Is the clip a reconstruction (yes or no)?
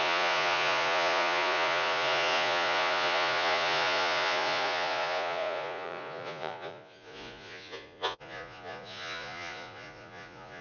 yes